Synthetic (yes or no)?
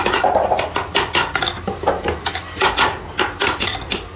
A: no